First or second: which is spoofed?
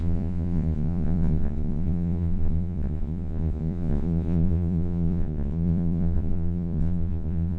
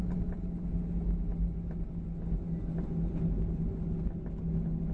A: first